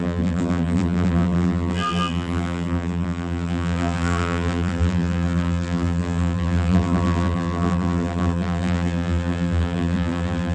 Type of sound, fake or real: fake